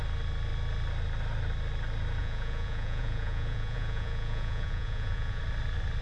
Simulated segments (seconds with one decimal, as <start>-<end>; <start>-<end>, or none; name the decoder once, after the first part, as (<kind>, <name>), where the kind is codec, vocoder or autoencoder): 2.2-5.4 (vocoder, Vocos)